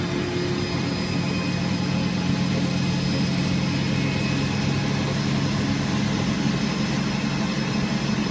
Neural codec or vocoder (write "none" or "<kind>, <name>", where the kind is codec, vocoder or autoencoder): none